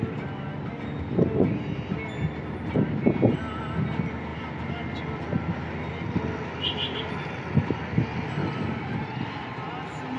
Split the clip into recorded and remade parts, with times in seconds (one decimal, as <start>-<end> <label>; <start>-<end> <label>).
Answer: 0.0-10.2 recorded